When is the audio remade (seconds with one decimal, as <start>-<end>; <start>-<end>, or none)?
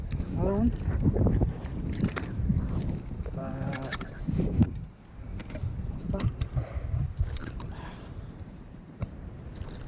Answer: 5.4-6.3; 7.4-9.1